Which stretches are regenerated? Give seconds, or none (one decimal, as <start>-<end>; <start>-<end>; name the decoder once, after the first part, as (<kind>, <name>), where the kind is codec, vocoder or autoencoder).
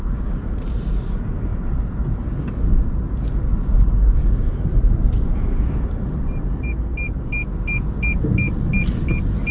1.5-2.4 (vocoder, BigVGAN v2); 3.5-6.7